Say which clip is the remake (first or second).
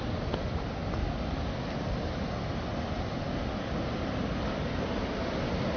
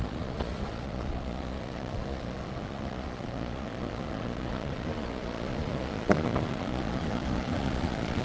second